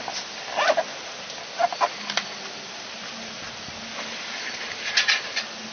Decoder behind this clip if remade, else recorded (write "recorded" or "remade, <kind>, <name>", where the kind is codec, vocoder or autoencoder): recorded